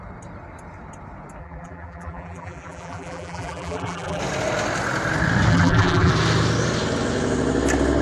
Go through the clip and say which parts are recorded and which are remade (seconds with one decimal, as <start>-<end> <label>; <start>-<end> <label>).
0.0-1.4 recorded; 1.4-4.2 remade; 4.2-5.5 recorded; 5.5-6.1 remade; 6.1-8.0 recorded